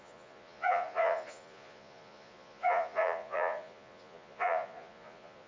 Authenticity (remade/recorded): remade